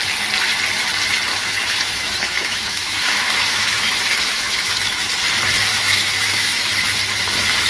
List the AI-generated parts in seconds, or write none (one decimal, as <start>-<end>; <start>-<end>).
1.3-5.1; 5.7-6.7